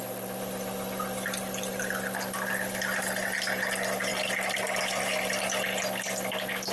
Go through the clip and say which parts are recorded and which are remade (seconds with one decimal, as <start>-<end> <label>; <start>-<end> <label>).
0.0-6.7 recorded